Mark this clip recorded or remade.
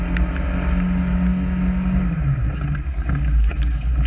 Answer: recorded